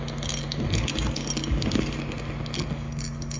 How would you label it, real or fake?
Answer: real